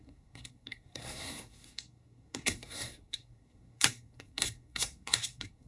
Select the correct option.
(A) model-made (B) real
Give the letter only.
A